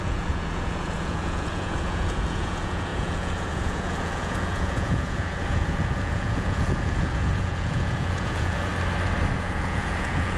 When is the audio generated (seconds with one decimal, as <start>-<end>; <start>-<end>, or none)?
0.0-8.7; 9.3-10.4